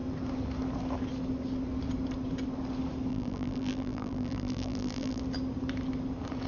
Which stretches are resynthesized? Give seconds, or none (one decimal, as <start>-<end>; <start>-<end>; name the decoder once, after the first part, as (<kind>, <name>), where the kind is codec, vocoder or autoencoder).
3.1-5.2 (vocoder, BigVGAN v2)